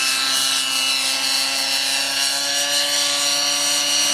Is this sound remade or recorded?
recorded